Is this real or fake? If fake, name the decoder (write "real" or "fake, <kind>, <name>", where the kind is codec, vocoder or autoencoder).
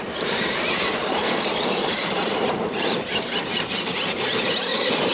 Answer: fake, vocoder, BigVGAN v2